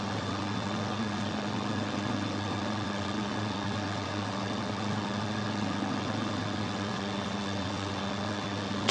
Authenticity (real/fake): fake